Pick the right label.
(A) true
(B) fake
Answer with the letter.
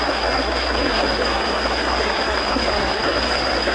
B